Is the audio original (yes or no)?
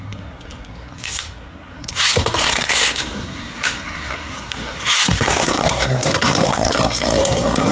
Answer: no